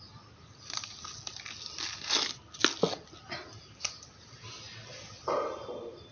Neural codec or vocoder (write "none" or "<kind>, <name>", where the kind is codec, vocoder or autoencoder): none